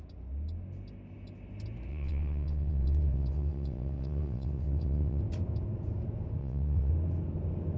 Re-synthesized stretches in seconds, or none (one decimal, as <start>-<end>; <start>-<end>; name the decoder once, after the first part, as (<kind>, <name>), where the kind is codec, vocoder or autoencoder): 1.9-5.2 (vocoder, WaveNeXt); 6.4-6.9

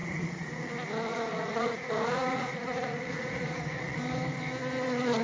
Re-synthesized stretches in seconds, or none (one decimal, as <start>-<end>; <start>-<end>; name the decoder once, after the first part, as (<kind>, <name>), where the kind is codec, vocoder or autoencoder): 0.0-0.7 (vocoder, Vocos); 1.1-4.0

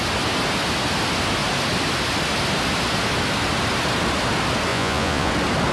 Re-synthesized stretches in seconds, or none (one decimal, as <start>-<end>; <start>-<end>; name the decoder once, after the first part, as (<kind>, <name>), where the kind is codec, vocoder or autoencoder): 4.7-5.3 (vocoder, Vocos)

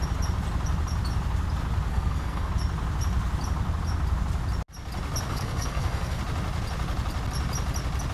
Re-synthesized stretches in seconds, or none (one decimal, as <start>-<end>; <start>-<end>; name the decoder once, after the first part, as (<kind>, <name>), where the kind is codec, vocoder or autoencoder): 1.9-2.5 (codec, SNAC); 5.3-6.2

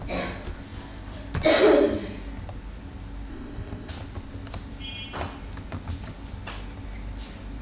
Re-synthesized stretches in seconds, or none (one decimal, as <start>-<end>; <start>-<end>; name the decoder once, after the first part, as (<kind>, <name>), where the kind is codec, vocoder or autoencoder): 3.3-3.9 (codec, ZipCodec)